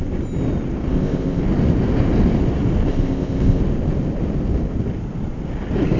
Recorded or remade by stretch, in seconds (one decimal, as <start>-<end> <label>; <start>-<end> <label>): 0.0-0.9 recorded; 0.9-1.4 remade; 1.4-2.9 recorded; 2.9-3.6 remade; 3.6-6.0 recorded